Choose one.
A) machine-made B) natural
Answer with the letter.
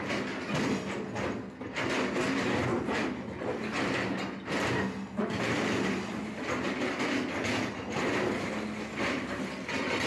B